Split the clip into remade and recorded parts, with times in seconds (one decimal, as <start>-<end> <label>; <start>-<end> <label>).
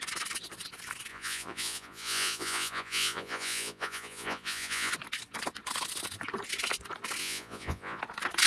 0.0-1.1 recorded; 1.1-4.9 remade; 4.9-7.2 recorded; 7.2-8.0 remade; 8.0-8.5 recorded